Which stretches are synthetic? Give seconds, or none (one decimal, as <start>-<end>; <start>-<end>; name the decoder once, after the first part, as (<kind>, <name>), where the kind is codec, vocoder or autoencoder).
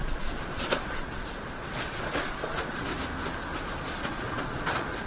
0.0-2.9 (vocoder, Vocos); 4.0-5.1